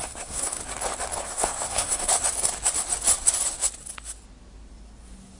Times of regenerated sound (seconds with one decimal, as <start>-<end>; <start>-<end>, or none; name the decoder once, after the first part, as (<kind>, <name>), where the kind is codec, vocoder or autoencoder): 0.0-0.6 (codec, SNAC); 1.2-2.1